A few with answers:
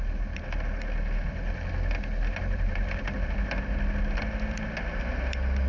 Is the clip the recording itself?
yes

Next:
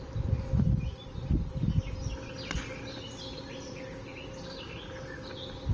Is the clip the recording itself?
yes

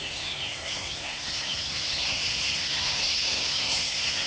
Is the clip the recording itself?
no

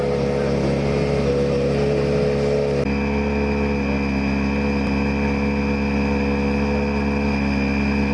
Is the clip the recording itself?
yes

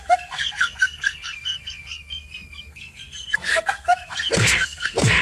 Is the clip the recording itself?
no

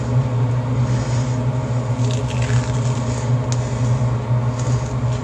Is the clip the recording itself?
yes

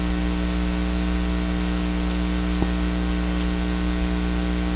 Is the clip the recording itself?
yes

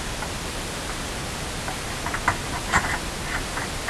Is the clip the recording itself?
yes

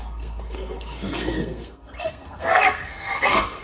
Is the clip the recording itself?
no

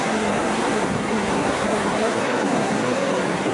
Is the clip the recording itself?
no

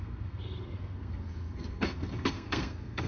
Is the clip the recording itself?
no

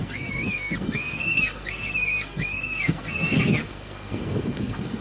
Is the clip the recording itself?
no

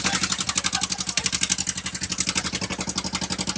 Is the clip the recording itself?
yes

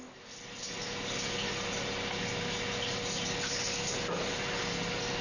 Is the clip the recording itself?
yes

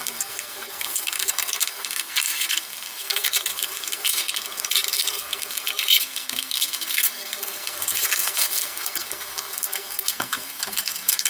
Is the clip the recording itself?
no